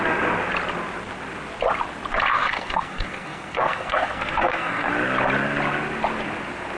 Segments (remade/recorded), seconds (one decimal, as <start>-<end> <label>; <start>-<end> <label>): 0.0-2.3 recorded; 2.3-4.9 remade; 4.9-6.8 recorded